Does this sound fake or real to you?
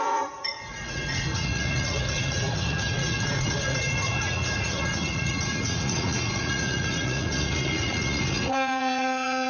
fake